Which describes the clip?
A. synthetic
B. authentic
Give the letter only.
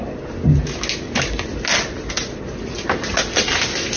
B